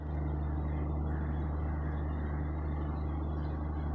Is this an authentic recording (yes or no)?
yes